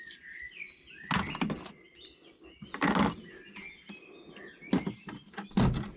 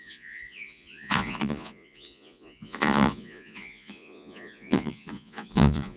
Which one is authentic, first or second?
first